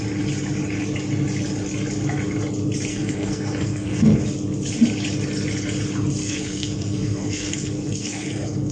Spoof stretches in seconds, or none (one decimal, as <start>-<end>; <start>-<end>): 2.9-4.2; 6.2-8.7